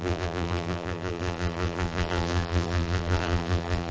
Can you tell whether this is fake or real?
fake